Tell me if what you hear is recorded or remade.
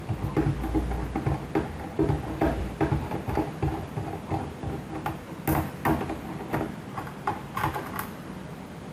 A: recorded